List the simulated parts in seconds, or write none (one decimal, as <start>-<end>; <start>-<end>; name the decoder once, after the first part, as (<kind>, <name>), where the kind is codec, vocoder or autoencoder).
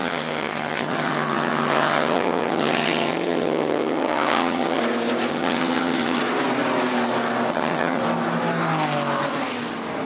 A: 0.0-4.8 (vocoder, HiFi-GAN); 5.3-6.2; 7.5-8.0